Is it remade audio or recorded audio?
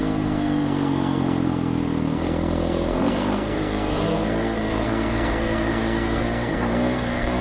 remade